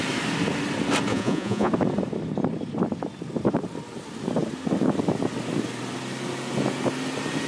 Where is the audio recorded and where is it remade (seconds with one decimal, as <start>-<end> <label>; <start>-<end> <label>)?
0.0-1.1 recorded; 1.1-1.7 remade; 1.7-7.5 recorded